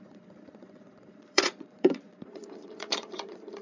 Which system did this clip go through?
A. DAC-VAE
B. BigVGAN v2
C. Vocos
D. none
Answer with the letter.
C